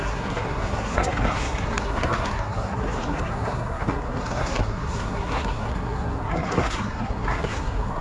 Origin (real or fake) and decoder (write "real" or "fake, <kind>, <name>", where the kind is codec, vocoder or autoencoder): fake, codec, SNAC